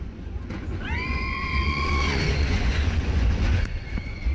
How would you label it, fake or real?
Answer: fake